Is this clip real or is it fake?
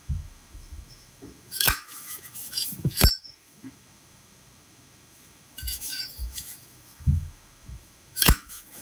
fake